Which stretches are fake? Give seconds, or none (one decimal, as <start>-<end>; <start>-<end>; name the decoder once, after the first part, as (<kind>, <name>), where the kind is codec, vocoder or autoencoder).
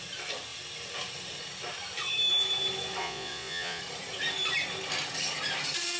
3.0-3.8 (vocoder, Vocos)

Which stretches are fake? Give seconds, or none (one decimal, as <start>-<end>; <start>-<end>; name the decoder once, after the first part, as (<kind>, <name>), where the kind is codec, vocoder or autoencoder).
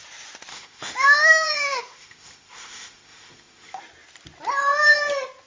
0.5-3.8 (autoencoder, DAC-VAE)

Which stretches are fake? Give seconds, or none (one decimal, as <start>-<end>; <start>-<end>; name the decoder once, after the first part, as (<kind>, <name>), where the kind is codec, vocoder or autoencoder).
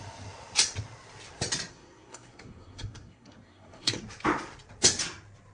1.7-4.0 (codec, SNAC)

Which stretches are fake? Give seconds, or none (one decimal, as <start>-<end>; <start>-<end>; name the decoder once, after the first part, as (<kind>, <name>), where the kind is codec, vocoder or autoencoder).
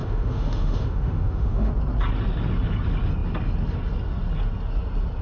0.0-1.7 (autoencoder, DAC-VAE)